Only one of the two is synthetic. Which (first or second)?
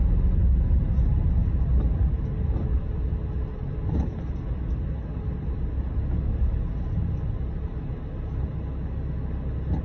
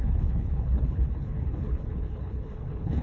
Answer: second